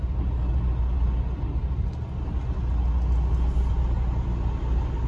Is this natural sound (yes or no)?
yes